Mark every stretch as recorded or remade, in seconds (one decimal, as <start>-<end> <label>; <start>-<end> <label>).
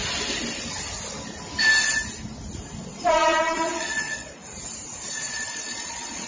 0.0-3.1 recorded; 3.1-4.4 remade; 4.4-5.1 recorded; 5.1-6.3 remade